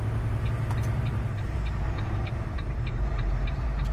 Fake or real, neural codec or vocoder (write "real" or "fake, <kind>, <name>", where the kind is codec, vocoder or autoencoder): fake, vocoder, BigVGAN v2